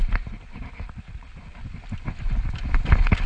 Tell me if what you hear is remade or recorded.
recorded